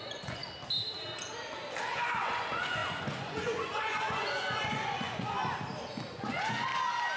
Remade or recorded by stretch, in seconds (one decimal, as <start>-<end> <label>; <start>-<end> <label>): 0.0-0.4 remade; 0.4-1.9 recorded; 1.9-5.4 remade; 5.4-6.1 recorded; 6.1-6.7 remade; 6.7-7.2 recorded